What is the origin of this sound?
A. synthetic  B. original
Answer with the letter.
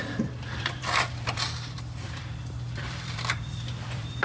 A